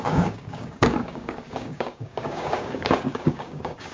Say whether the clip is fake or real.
fake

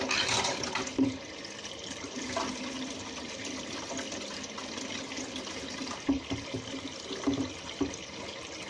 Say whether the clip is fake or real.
real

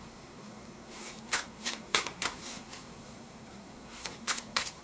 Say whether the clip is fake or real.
fake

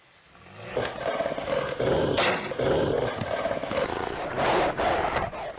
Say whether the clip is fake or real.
real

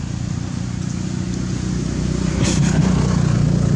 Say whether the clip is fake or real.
real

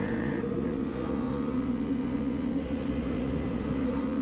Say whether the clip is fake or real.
fake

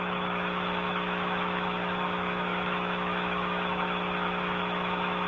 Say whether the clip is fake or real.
fake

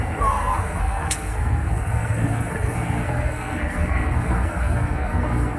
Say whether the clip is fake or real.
fake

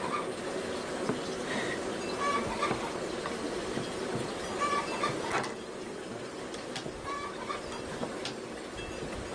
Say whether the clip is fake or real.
real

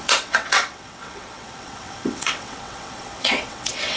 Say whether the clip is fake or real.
fake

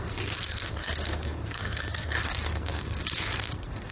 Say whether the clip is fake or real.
fake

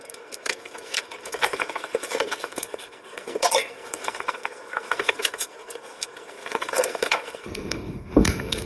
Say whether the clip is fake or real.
fake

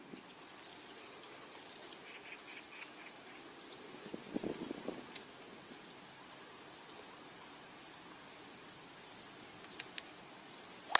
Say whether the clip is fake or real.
real